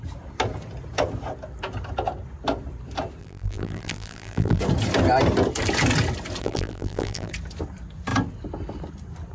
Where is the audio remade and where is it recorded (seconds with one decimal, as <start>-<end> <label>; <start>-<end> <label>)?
0.0-3.2 recorded; 3.2-4.6 remade; 4.6-6.4 recorded; 6.4-7.3 remade; 7.3-9.3 recorded